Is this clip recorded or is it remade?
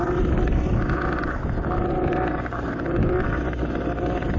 recorded